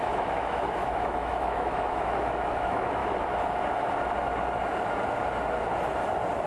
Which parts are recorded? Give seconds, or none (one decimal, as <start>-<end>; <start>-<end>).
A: 3.0-6.5